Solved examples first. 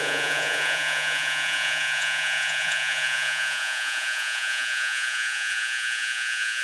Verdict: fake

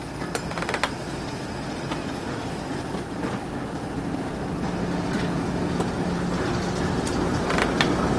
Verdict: real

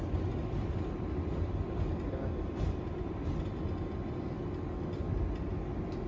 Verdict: real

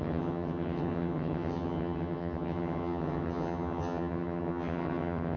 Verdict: fake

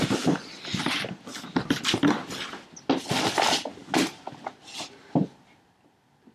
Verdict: real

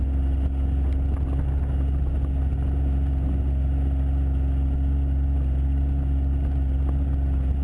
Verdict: real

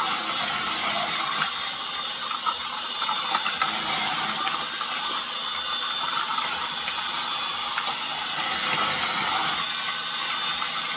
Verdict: fake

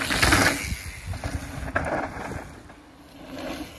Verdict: real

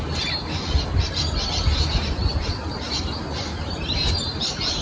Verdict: fake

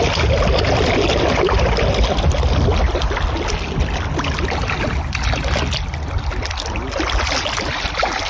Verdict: real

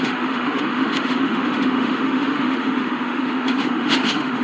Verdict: fake